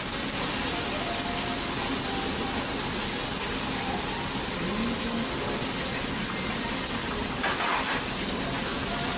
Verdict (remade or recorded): recorded